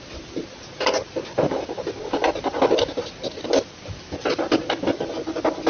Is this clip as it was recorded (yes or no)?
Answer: yes